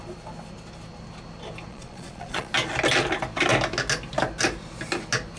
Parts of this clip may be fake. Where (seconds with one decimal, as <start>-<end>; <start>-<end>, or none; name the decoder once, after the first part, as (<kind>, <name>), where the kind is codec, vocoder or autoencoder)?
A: 1.7-2.5 (vocoder, Vocos)

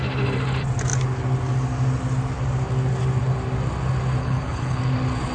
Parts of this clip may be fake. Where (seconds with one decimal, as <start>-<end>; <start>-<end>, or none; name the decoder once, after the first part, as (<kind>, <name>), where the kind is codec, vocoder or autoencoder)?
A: 4.2-4.8 (codec, HILCodec)

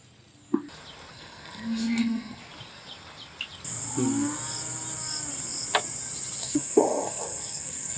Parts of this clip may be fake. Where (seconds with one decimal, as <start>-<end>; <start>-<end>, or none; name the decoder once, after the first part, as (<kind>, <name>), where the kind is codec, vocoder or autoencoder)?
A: 1.1-2.4 (codec, SNAC); 6.4-8.0

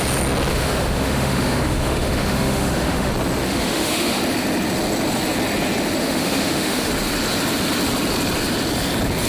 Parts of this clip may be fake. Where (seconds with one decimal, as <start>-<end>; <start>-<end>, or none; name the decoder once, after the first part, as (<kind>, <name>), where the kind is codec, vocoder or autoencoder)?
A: 0.5-3.1 (autoencoder, DAC-VAE); 3.5-4.2; 6.0-6.9

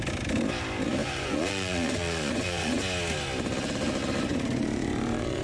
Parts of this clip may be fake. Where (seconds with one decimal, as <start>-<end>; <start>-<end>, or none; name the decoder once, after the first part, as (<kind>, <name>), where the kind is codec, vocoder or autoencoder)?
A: 1.0-2.8 (vocoder, Vocos); 4.3-5.4

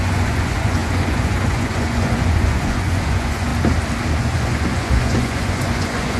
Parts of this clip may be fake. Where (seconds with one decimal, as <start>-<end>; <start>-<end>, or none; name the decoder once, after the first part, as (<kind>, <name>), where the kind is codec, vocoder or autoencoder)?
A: 0.0-3.5 (vocoder, Vocos); 4.2-6.2

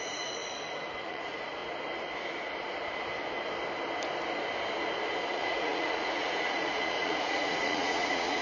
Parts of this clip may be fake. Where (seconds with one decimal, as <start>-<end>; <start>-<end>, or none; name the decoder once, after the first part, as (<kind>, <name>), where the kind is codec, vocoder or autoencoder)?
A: 0.0-0.4 (vocoder, Vocos); 1.0-1.6; 5.3-8.4

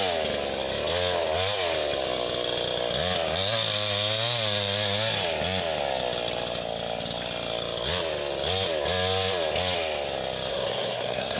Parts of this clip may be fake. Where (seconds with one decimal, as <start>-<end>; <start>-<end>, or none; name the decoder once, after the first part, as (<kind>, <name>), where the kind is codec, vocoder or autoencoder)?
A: 10.5-11.4 (codec, SNAC)